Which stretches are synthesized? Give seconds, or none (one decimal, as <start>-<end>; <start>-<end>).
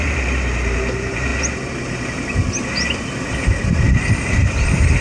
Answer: 0.0-1.3; 4.3-5.0